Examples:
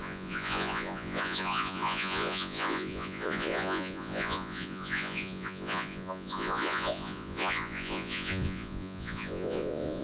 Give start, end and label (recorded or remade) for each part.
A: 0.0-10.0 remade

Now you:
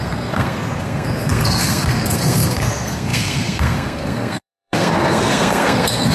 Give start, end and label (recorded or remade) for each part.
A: 0.0-6.1 remade

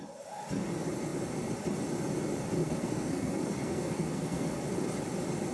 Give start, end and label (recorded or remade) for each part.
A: 0.0-2.6 recorded; 2.6-4.6 remade; 4.6-5.5 recorded